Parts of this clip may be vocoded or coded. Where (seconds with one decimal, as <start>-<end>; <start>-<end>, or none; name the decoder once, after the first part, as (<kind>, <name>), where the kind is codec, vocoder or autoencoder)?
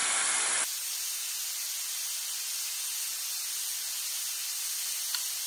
none